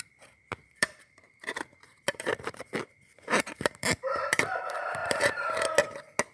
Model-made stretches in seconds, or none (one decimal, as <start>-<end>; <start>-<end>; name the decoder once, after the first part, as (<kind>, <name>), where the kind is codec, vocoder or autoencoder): 0.8-4.6 (vocoder, BigVGAN v2); 5.0-5.5